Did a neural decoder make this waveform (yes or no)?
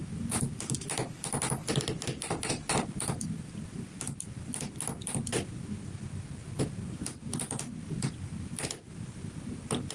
no